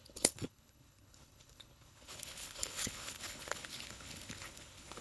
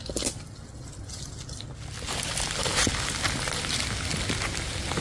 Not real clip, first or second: first